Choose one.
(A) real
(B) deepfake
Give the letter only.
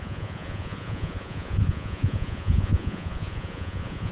B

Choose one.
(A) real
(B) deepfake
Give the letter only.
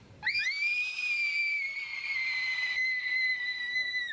A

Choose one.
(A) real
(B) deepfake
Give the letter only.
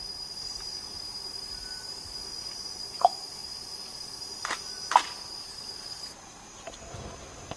A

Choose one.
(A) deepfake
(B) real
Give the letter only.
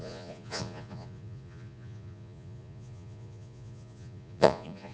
A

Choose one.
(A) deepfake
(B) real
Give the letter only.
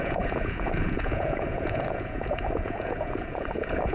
A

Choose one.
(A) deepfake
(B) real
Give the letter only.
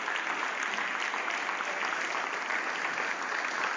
B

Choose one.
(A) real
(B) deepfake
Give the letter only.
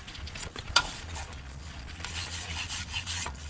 B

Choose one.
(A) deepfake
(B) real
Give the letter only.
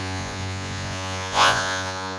A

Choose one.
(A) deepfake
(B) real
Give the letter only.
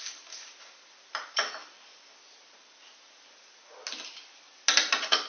B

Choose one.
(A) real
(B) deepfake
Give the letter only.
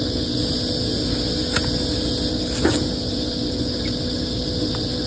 A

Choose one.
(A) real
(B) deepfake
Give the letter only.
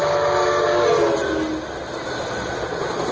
A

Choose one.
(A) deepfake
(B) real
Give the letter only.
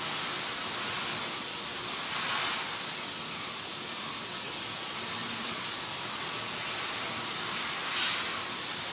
B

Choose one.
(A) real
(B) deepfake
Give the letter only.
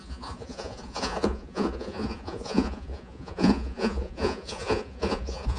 B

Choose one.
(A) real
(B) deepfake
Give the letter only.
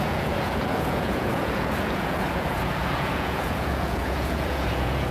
B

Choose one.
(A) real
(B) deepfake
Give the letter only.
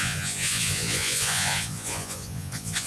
B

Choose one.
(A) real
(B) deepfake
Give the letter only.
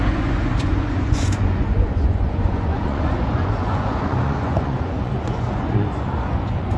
B